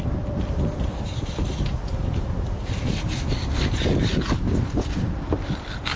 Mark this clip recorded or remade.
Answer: recorded